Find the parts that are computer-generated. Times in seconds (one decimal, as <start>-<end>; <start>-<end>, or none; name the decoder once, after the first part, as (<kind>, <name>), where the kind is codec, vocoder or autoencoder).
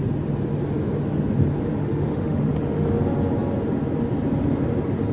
1.8-2.9 (autoencoder, DAC-VAE)